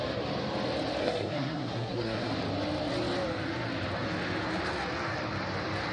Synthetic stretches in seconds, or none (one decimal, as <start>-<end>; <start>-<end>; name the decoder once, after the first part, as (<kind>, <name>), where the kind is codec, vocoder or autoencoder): 1.0-2.3 (codec, SNAC)